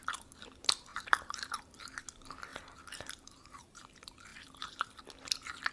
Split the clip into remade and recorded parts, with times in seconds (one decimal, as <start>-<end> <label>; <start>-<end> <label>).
0.0-0.9 recorded; 0.9-1.8 remade; 1.8-2.5 recorded; 2.5-3.9 remade; 3.9-5.7 recorded

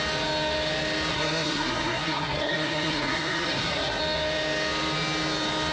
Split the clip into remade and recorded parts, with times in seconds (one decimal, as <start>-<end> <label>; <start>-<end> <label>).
0.0-1.1 recorded; 1.1-4.0 remade; 4.0-5.7 recorded